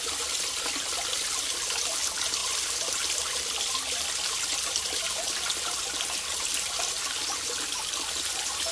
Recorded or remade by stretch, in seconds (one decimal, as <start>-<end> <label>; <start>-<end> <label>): 0.0-8.7 recorded